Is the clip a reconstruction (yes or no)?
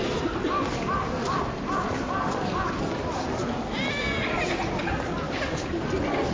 no